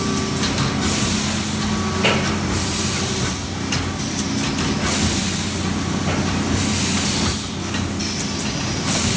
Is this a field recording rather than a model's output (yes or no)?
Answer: yes